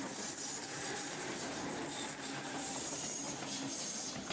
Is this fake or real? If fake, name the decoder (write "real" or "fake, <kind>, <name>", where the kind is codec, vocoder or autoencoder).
fake, vocoder, BigVGAN v2